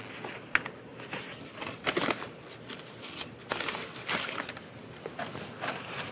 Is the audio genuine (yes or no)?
yes